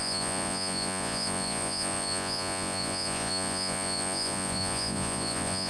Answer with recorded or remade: remade